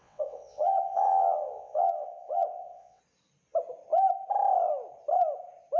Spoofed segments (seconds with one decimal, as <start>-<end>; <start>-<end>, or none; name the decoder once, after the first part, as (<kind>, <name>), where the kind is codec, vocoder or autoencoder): 0.0-3.0 (vocoder, WaveNeXt)